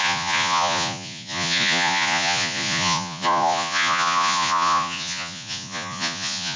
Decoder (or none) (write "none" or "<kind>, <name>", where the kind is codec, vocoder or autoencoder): vocoder, Vocos